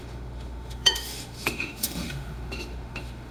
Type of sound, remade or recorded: remade